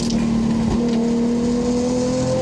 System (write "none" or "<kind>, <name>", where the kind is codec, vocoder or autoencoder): none